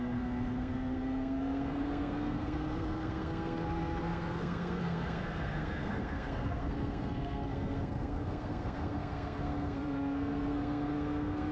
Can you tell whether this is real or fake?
fake